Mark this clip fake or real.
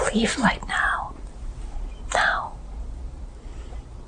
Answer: fake